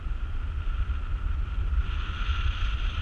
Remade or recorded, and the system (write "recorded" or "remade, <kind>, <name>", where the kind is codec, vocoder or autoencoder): recorded